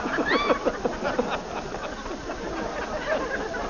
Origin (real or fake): real